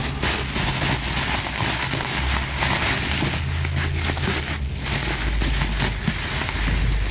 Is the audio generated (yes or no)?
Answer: no